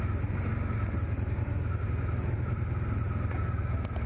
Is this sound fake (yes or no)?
no